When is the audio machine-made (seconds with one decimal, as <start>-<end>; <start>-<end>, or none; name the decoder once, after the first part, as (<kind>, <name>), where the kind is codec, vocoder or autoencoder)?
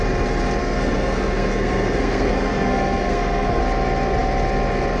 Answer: 0.6-3.6 (codec, SNAC)